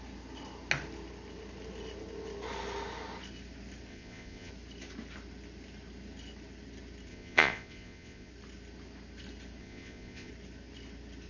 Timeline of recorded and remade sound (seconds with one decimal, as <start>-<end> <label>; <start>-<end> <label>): 0.0-3.9 recorded; 3.9-4.5 remade; 4.5-7.1 recorded; 7.1-8.3 remade; 8.3-9.6 recorded; 9.6-10.3 remade; 10.3-11.3 recorded